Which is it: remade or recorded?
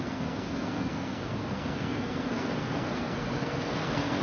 remade